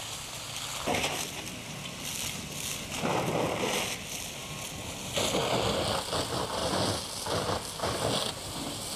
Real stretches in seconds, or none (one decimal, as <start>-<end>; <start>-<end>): 0.0-9.0